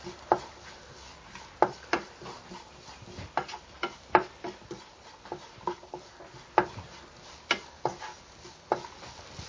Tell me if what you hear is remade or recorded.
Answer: recorded